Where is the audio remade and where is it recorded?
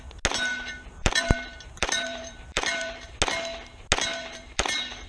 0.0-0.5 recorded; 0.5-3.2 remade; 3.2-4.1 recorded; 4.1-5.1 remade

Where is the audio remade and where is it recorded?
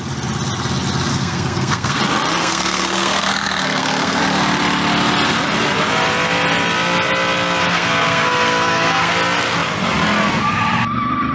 0.0-1.1 recorded; 1.1-2.0 remade; 2.0-2.4 recorded; 2.4-4.2 remade; 4.2-7.6 recorded; 7.6-9.1 remade; 9.1-11.3 recorded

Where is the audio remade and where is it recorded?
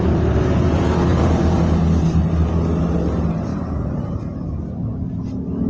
0.0-3.5 recorded; 3.5-4.1 remade; 4.1-5.7 recorded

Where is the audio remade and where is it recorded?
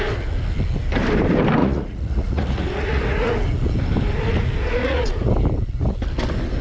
0.0-1.6 recorded; 1.6-3.3 remade; 3.3-4.8 recorded; 4.8-5.3 remade; 5.3-6.6 recorded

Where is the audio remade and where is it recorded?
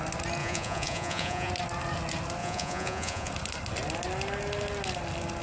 0.0-0.4 recorded; 0.4-1.5 remade; 1.5-2.4 recorded; 2.4-3.3 remade; 3.3-5.4 recorded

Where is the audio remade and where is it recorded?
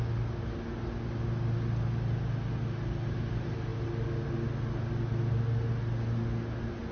0.0-6.9 recorded